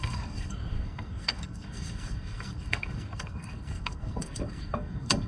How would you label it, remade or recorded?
remade